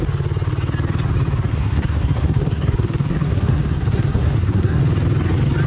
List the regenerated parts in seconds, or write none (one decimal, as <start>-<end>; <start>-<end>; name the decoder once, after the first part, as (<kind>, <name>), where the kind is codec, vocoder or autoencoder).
1.5-4.8 (codec, SNAC)